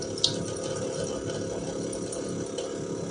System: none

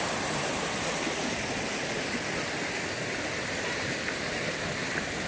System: none